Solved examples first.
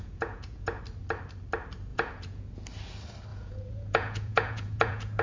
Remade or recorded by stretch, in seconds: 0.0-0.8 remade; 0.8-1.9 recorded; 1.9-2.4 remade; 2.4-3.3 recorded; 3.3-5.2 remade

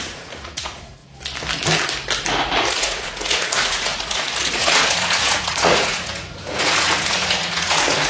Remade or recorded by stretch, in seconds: 0.0-1.0 remade; 1.0-2.7 recorded; 2.7-8.1 remade

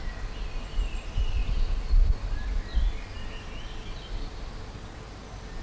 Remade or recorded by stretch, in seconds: 0.0-5.6 recorded

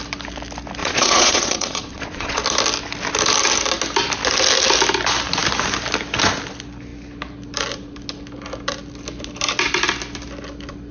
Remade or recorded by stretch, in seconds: 0.0-0.8 recorded; 0.8-2.4 remade; 2.4-10.9 recorded